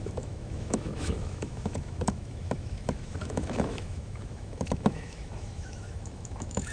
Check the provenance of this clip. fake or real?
fake